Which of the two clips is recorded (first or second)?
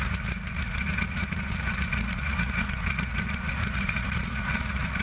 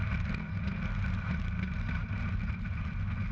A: second